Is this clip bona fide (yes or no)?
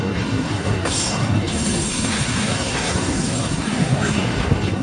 no